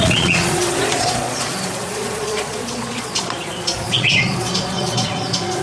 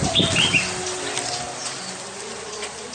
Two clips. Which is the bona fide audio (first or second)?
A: second